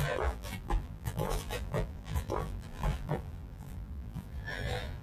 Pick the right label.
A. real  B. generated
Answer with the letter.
B